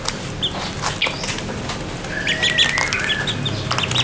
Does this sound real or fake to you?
real